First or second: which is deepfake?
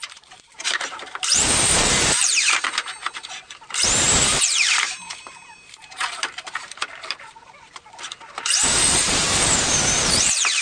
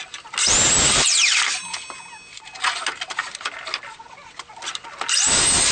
first